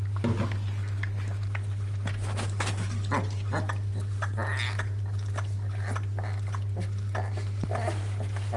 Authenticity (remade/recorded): recorded